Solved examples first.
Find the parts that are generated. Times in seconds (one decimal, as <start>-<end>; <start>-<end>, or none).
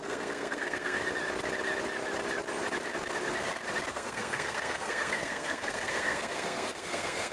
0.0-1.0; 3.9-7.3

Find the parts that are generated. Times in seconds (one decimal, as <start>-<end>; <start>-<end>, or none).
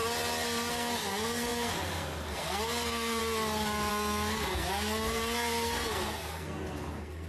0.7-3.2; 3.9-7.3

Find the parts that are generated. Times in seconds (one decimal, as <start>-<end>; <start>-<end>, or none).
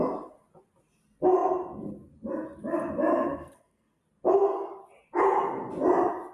3.1-4.0